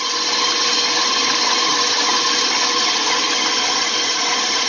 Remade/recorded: recorded